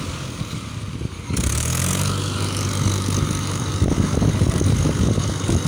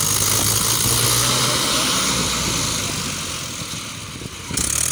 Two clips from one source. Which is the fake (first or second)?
first